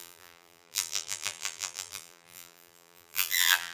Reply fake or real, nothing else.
fake